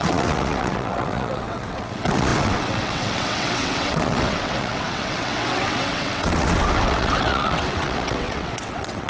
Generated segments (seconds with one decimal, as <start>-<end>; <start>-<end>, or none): 0.0-9.1